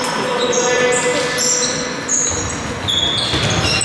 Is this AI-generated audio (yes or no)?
no